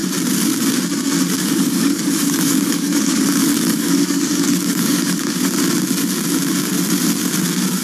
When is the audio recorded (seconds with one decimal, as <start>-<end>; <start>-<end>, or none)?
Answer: 0.0-1.4; 5.5-7.8